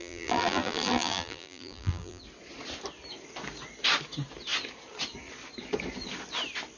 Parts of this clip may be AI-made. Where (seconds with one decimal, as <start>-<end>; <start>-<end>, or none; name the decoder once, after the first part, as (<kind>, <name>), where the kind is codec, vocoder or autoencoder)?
0.0-2.2 (vocoder, BigVGAN v2)